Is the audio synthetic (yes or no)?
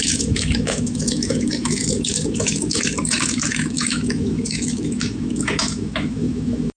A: yes